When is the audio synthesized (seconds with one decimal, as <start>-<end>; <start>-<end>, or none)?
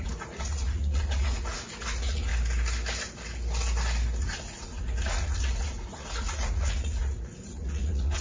0.0-2.3; 4.2-8.2